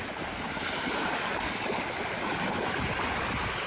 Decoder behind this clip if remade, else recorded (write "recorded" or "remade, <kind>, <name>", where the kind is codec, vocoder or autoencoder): recorded